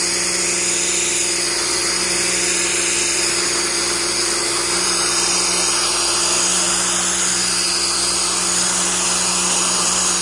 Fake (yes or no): no